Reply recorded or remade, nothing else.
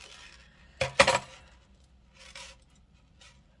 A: recorded